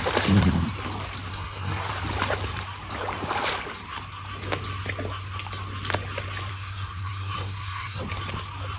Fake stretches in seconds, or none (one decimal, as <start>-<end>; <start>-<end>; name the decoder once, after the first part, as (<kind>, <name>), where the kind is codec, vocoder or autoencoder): 1.3-1.9 (codec, SNAC); 6.5-8.0